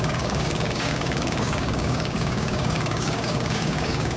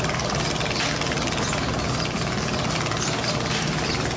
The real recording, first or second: second